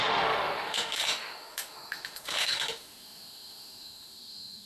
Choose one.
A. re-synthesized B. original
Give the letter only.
A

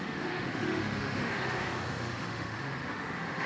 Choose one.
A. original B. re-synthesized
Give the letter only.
B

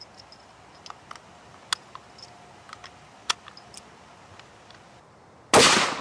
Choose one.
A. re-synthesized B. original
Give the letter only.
B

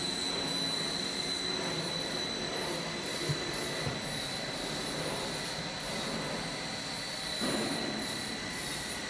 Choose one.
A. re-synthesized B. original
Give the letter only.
B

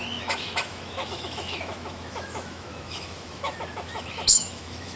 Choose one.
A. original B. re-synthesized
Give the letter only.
B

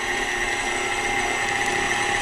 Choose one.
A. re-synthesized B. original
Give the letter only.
B